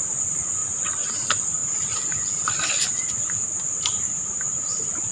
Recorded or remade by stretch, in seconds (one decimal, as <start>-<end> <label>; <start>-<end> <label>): 0.0-5.1 recorded